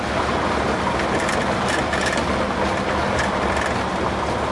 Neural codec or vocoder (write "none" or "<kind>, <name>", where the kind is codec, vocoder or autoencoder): none